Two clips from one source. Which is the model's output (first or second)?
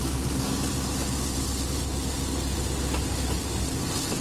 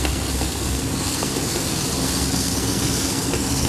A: second